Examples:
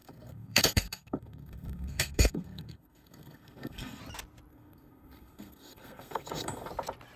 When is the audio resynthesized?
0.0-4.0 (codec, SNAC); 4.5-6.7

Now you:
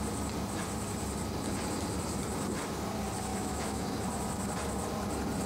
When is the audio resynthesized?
3.3-4.0 (autoencoder, DAC-VAE)

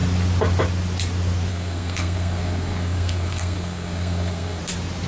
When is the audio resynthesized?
1.5-4.6 (codec, SNAC)